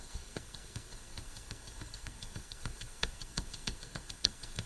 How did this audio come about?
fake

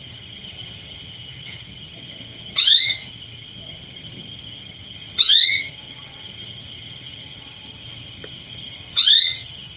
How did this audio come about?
fake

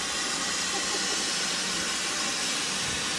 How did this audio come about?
real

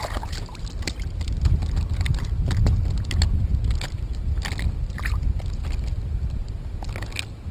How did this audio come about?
real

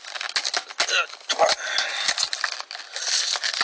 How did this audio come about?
real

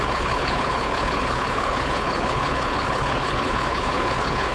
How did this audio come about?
fake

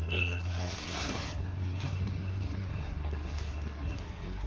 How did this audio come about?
fake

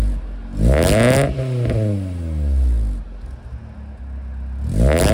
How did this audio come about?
real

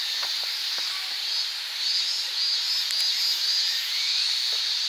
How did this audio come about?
real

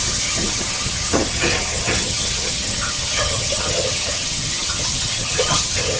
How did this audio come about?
fake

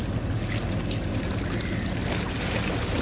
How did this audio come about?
real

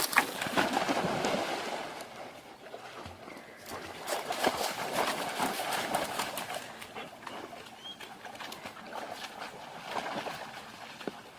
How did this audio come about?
real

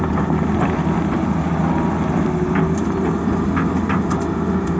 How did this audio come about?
real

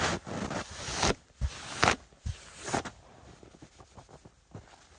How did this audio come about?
real